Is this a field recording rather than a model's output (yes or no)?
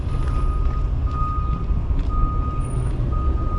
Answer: yes